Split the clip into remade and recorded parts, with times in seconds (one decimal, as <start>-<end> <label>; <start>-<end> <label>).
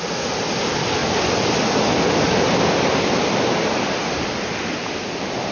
0.0-5.5 recorded